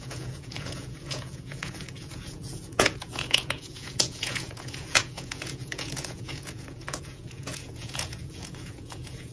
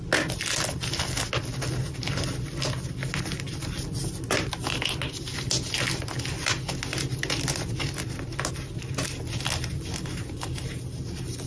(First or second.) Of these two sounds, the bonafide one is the second